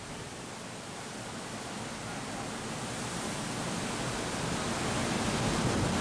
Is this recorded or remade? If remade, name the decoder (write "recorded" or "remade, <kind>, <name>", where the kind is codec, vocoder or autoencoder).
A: recorded